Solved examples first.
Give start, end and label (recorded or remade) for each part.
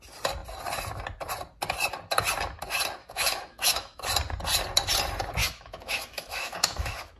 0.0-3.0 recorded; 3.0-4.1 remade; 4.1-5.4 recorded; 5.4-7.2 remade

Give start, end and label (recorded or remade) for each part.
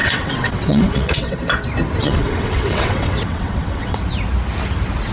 0.0-1.4 remade; 1.4-2.0 recorded; 2.0-4.0 remade; 4.0-5.1 recorded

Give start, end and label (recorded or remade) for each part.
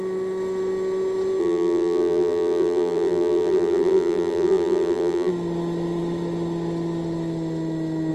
0.0-1.4 recorded; 1.4-5.3 remade; 5.3-8.1 recorded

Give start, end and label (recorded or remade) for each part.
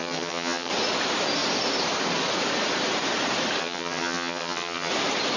0.0-0.7 remade; 0.7-3.6 recorded; 3.6-4.9 remade; 4.9-5.4 recorded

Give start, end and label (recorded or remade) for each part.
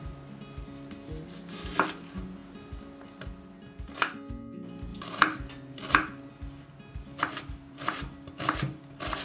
0.0-6.9 recorded; 6.9-8.0 remade; 8.0-9.2 recorded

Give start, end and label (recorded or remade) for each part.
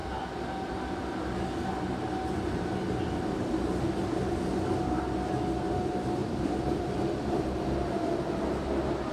0.0-6.2 recorded; 6.2-7.0 remade; 7.0-9.1 recorded